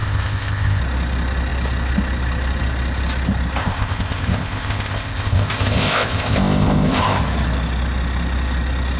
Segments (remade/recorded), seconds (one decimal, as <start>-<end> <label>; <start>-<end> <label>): 0.0-0.8 remade; 0.8-3.6 recorded; 3.6-7.2 remade; 7.2-9.0 recorded